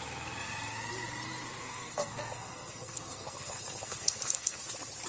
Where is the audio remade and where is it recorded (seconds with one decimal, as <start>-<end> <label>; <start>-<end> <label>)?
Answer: 0.0-1.6 recorded; 1.6-4.6 remade; 4.6-5.1 recorded